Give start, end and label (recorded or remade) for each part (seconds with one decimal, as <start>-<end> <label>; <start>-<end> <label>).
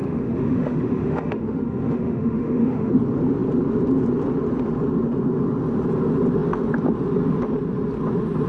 0.0-2.9 remade; 2.9-8.5 recorded